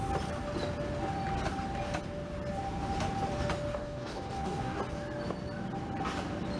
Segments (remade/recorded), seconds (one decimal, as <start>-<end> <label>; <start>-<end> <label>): 0.0-3.7 recorded; 3.7-4.8 remade; 4.8-6.6 recorded

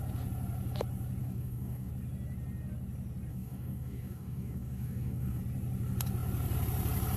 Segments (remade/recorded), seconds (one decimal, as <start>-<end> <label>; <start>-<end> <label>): 0.0-1.2 recorded; 1.2-1.9 remade; 1.9-3.3 recorded; 3.3-5.4 remade; 5.4-7.2 recorded